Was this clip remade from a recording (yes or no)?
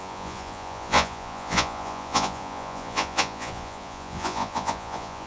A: yes